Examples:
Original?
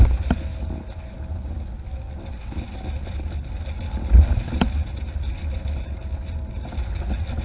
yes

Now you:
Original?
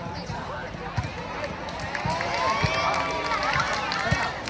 yes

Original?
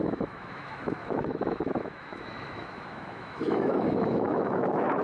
no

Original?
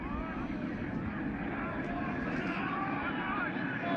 yes